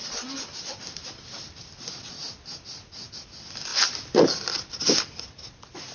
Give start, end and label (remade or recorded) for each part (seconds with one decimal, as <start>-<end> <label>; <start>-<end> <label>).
0.0-5.9 recorded